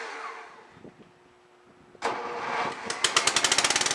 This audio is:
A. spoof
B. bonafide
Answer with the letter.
B